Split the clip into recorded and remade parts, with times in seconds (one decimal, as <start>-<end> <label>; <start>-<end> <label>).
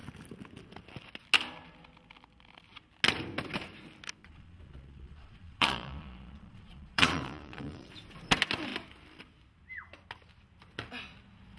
0.0-4.2 recorded; 4.2-7.9 remade; 7.9-11.6 recorded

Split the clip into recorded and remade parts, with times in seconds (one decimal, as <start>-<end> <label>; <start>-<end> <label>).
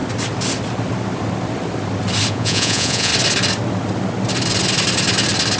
0.0-2.3 recorded; 2.3-3.1 remade; 3.1-5.6 recorded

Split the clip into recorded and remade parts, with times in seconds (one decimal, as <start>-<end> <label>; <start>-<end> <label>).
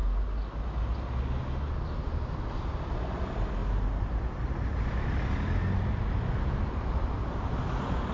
0.0-8.1 recorded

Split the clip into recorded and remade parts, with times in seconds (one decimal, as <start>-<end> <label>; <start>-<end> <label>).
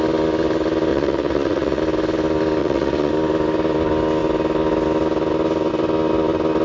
0.0-0.9 recorded; 0.9-1.8 remade; 1.8-2.6 recorded; 2.6-3.1 remade; 3.1-6.6 recorded